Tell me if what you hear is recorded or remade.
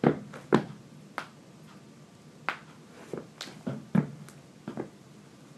recorded